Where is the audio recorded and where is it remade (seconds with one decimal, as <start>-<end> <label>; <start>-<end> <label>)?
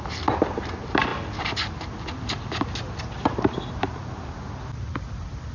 0.0-5.5 recorded